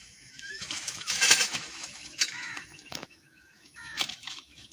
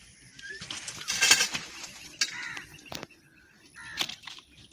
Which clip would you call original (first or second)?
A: second